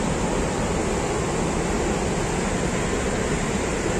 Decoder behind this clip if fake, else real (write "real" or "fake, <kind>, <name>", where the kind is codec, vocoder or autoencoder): real